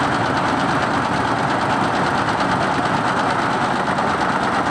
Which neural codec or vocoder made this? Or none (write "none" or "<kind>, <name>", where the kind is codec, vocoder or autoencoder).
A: none